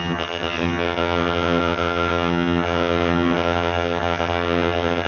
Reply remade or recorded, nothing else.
remade